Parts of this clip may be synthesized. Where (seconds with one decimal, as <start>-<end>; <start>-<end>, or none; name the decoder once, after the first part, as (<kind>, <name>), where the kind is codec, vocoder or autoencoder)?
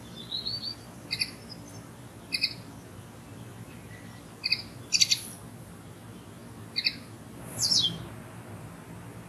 none